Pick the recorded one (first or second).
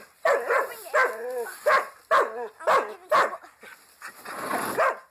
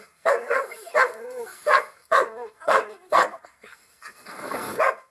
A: first